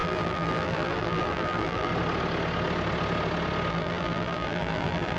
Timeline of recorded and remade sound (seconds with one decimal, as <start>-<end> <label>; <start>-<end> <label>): 0.0-1.9 remade; 1.9-3.7 recorded; 3.7-5.2 remade